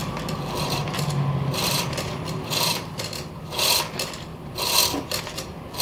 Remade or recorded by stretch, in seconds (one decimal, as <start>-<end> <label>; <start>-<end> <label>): 0.0-3.5 remade; 3.5-4.3 recorded; 4.3-5.2 remade; 5.2-5.8 recorded